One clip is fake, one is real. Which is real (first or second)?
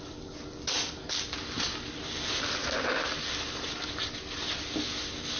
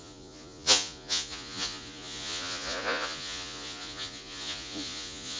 first